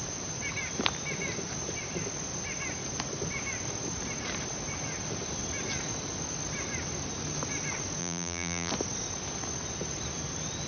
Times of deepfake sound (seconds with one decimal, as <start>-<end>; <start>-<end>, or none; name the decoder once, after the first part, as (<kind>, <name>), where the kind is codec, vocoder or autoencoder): 8.0-8.7 (vocoder, BigVGAN v2)